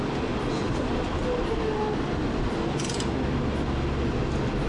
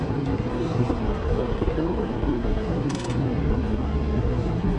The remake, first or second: second